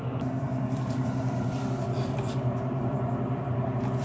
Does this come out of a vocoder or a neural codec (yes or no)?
yes